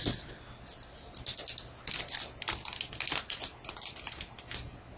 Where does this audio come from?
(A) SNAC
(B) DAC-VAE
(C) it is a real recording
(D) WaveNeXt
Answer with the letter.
C